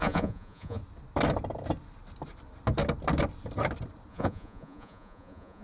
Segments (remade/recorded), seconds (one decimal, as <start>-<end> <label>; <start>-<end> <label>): 0.0-0.8 remade; 0.8-4.1 recorded; 4.1-5.6 remade